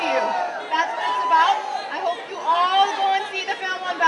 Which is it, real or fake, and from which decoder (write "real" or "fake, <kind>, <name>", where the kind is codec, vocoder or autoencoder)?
real